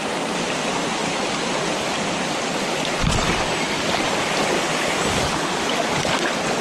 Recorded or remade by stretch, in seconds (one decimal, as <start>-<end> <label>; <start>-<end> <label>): 0.0-6.6 recorded